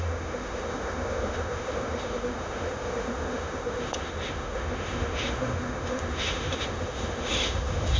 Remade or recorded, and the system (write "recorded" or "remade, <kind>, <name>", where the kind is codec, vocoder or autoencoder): remade, autoencoder, DAC-VAE